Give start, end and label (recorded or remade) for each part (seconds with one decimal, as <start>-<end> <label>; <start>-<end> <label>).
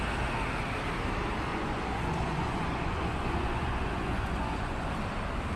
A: 0.0-1.5 recorded; 1.5-4.9 remade; 4.9-5.6 recorded